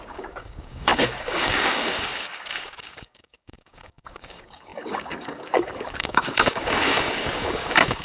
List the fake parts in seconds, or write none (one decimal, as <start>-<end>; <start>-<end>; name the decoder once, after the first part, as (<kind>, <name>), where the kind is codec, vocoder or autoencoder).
0.0-8.0 (codec, DAC)

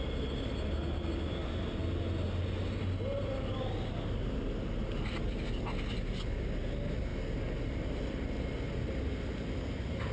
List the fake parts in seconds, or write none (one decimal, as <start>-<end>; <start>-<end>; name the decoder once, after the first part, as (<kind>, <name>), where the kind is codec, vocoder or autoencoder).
none

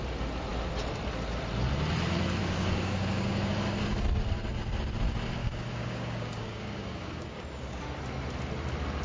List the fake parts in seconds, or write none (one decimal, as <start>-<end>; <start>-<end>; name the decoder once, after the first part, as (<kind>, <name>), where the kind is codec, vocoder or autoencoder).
2.4-3.5 (codec, DAC); 5.4-7.8

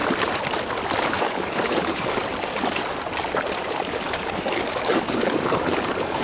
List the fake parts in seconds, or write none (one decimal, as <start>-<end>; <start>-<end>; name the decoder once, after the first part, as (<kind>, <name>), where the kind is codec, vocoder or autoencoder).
1.1-2.2 (codec, DAC); 3.6-6.2

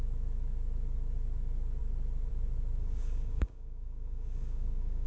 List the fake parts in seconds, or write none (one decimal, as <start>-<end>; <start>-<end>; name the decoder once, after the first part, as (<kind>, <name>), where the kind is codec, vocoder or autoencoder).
2.8-5.1 (codec, DAC)